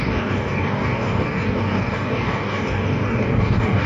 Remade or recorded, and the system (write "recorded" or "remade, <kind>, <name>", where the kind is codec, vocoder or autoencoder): remade, codec, DAC